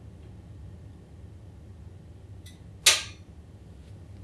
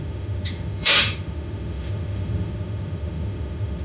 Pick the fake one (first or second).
second